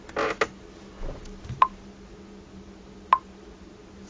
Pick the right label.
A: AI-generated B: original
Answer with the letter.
B